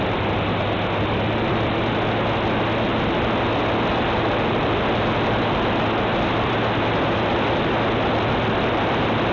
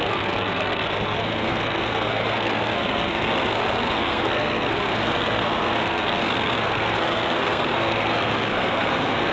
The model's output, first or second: second